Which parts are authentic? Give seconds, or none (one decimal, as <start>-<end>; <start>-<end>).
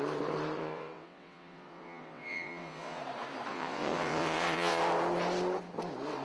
0.0-0.6; 3.0-3.5; 4.8-6.2